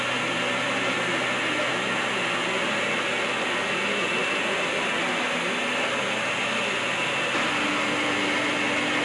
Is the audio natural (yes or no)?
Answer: yes